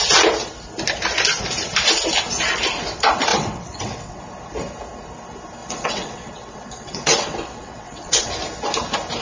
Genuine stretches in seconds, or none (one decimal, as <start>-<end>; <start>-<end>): 0.0-3.3; 4.2-5.6; 8.3-9.2